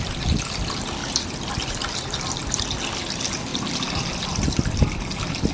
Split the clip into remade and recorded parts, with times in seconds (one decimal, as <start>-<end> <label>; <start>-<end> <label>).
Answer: 0.0-5.5 recorded